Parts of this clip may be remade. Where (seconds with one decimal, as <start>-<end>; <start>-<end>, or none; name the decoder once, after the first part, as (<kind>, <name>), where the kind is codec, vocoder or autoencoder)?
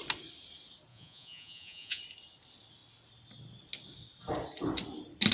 0.9-2.0 (vocoder, Vocos)